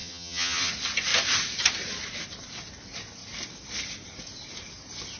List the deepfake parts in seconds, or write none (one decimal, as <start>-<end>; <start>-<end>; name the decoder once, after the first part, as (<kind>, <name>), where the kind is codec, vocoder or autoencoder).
0.0-0.7 (vocoder, HiFi-GAN)